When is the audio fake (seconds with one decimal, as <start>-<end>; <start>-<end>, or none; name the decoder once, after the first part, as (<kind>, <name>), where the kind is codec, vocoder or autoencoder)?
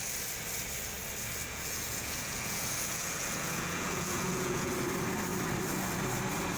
1.5-4.7 (vocoder, Vocos)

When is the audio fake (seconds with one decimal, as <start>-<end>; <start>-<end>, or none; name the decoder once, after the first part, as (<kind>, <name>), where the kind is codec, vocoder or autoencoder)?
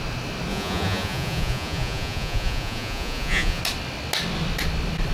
0.5-3.6 (vocoder, Vocos)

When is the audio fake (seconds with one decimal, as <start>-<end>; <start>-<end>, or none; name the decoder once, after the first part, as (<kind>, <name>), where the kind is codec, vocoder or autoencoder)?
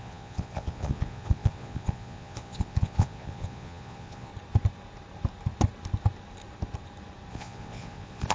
0.0-4.3 (vocoder, Vocos); 7.3-8.3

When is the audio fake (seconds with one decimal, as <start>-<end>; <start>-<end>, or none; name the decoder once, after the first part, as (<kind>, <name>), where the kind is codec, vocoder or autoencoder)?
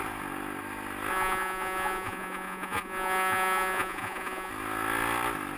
1.1-4.5 (vocoder, Vocos)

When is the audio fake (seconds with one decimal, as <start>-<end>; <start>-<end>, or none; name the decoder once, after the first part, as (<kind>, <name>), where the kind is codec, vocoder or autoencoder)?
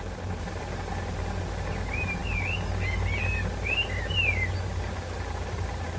none